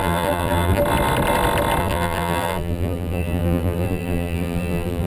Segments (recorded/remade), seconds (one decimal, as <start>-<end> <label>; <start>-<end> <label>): 0.0-0.8 remade; 0.8-1.8 recorded; 1.8-5.1 remade